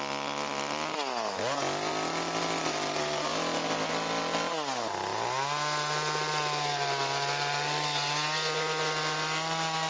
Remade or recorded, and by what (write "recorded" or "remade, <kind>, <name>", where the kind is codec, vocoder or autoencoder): recorded